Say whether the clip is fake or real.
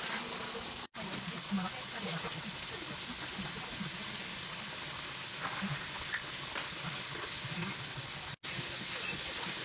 real